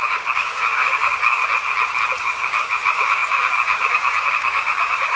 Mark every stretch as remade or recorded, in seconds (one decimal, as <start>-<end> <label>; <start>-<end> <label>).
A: 0.0-1.4 remade; 1.4-2.2 recorded; 2.2-5.2 remade